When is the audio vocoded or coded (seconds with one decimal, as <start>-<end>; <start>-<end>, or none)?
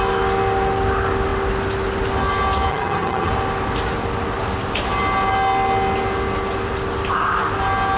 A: 2.7-3.3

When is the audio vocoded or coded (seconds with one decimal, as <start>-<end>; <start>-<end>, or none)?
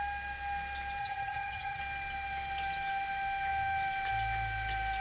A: 1.0-1.8